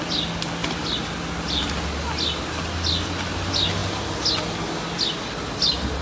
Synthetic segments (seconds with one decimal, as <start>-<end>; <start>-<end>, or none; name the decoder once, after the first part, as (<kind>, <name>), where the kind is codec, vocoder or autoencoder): none